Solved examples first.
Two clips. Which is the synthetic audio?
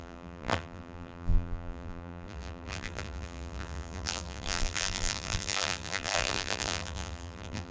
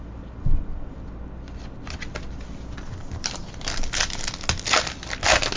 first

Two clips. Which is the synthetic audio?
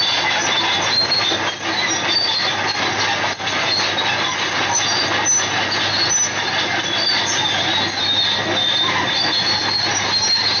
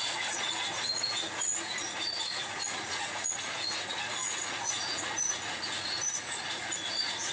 second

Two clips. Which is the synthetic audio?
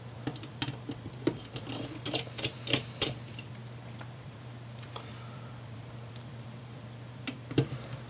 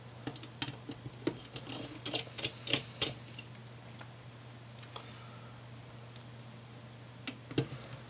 first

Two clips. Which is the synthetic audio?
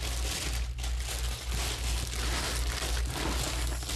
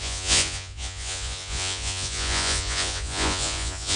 second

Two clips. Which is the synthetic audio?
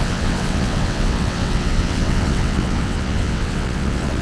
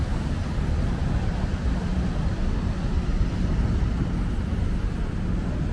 first